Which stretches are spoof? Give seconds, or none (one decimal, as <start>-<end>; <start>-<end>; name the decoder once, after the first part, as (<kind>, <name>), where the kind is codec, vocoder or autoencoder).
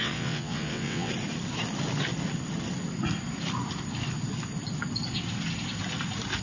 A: 0.0-1.1 (vocoder, WaveNeXt)